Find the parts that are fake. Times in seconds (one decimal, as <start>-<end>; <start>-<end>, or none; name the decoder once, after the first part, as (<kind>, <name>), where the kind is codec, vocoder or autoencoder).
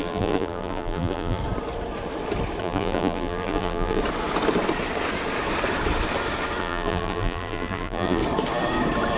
0.0-1.4 (vocoder, BigVGAN v2); 2.6-4.0; 6.6-8.2